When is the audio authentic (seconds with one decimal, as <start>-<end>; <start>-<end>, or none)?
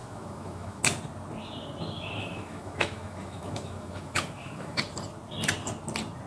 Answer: 0.8-2.2; 4.8-6.3